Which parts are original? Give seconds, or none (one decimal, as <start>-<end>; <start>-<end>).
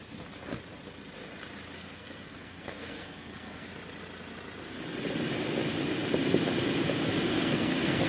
0.0-1.8; 3.7-7.3